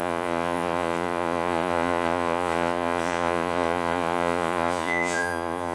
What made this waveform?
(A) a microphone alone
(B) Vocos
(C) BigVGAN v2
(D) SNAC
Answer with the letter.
B